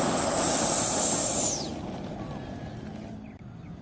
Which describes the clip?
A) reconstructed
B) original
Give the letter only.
B